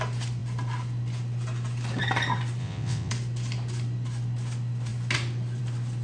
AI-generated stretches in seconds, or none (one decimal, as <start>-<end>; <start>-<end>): 2.6-3.1